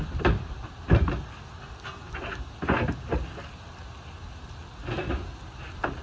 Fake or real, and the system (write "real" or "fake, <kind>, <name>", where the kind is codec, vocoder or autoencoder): real